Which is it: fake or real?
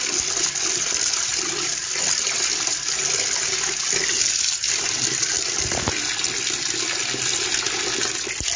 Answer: real